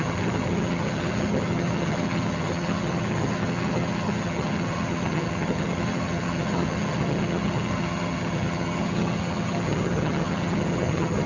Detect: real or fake fake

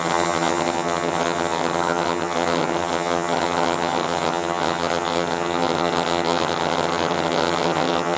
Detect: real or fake fake